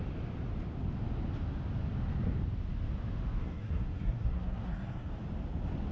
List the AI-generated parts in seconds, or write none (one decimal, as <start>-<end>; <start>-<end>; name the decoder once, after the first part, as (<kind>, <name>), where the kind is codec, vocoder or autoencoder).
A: 3.4-5.1 (codec, SNAC)